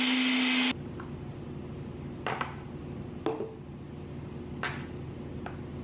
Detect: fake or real real